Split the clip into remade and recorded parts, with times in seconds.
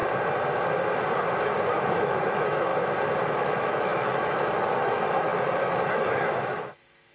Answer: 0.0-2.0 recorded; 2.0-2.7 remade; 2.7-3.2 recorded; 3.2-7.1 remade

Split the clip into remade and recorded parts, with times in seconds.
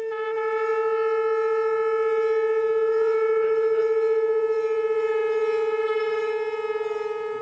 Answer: 0.0-7.4 recorded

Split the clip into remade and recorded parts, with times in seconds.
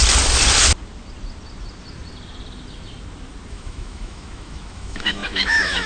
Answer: 0.0-3.5 recorded; 3.5-5.9 remade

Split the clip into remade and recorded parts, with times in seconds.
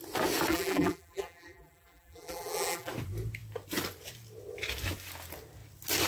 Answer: 0.0-0.5 recorded; 0.5-2.9 remade; 2.9-6.1 recorded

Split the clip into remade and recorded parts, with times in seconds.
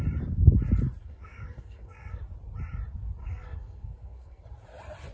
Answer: 0.0-1.0 recorded; 1.0-2.2 remade; 2.2-3.2 recorded; 3.2-4.4 remade; 4.4-5.1 recorded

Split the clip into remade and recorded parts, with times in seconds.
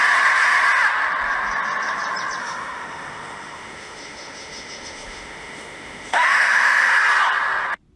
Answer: 0.0-2.4 recorded; 2.4-6.9 remade; 6.9-8.0 recorded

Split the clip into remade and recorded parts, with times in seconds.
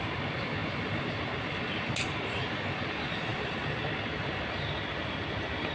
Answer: 0.0-5.7 recorded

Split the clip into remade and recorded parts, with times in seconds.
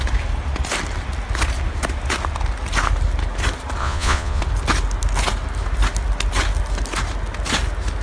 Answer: 0.0-3.8 recorded; 3.8-4.4 remade; 4.4-8.0 recorded